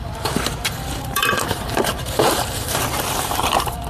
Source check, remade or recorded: remade